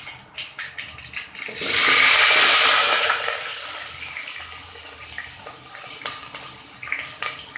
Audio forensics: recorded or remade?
recorded